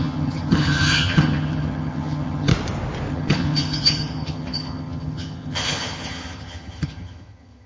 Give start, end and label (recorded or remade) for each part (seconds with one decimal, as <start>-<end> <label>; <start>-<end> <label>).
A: 0.0-2.5 remade; 2.5-3.1 recorded; 3.1-7.7 remade